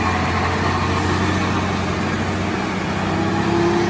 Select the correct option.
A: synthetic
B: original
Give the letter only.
B